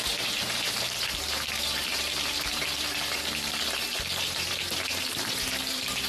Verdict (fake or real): fake